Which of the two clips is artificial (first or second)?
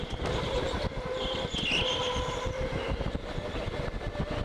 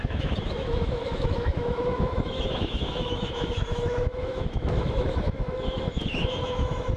second